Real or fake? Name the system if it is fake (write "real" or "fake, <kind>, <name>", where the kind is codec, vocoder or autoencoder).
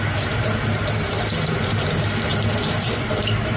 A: fake, vocoder, BigVGAN v2